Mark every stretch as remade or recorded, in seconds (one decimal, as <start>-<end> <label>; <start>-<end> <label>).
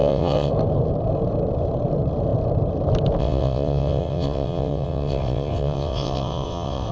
0.0-0.5 remade; 0.5-3.2 recorded; 3.2-6.9 remade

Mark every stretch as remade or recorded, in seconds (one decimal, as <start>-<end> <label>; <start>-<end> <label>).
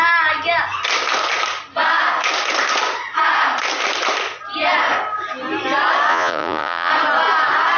0.0-6.1 recorded; 6.1-6.9 remade; 6.9-7.8 recorded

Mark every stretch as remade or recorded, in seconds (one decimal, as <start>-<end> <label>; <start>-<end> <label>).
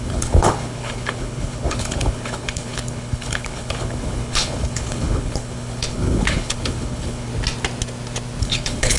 0.0-7.3 remade; 7.3-8.4 recorded; 8.4-9.0 remade